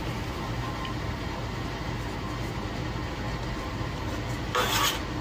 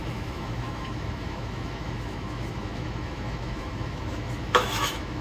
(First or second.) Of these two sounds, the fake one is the second